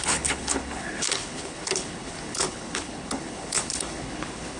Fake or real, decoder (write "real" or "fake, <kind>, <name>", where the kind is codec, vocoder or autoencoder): fake, codec, HILCodec